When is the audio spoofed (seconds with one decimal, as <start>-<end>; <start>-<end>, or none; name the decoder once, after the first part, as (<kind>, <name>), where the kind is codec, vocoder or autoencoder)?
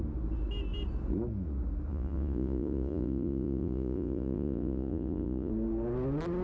1.9-5.5 (vocoder, Vocos)